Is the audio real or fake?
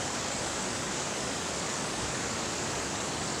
fake